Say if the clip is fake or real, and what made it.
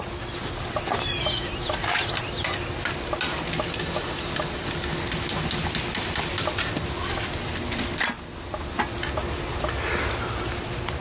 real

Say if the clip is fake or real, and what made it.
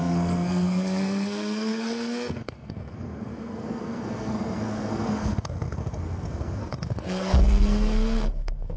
fake, codec, SNAC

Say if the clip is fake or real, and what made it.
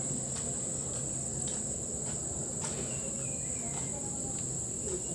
real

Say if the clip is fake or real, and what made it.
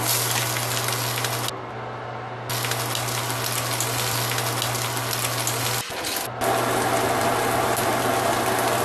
real